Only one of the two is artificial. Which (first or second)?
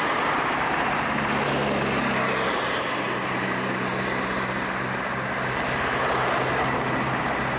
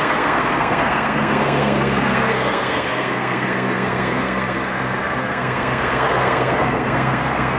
second